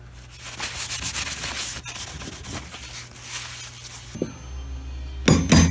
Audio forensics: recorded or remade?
recorded